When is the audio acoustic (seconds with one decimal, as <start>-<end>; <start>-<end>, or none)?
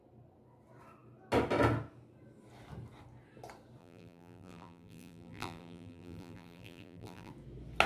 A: 0.0-3.8; 7.3-7.9